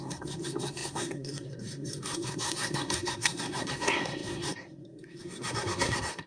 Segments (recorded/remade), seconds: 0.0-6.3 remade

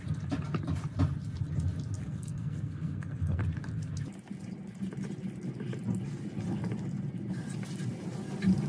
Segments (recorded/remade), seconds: 0.0-2.0 recorded; 2.0-3.4 remade; 3.4-8.7 recorded

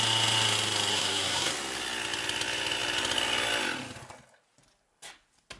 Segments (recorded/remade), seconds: 0.0-0.9 recorded; 0.9-1.5 remade; 1.5-5.6 recorded

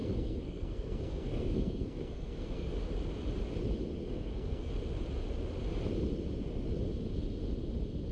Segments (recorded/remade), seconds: 0.0-2.7 remade; 2.7-4.0 recorded; 4.0-4.7 remade; 4.7-8.1 recorded

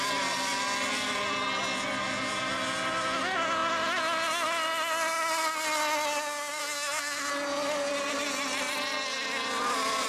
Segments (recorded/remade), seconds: 0.0-6.6 recorded; 6.6-7.3 remade; 7.3-10.1 recorded